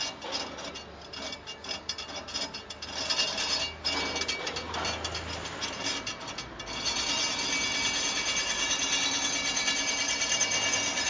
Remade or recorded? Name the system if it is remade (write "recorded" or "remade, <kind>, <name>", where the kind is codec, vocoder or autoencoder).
recorded